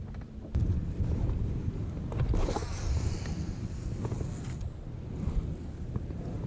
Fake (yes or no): no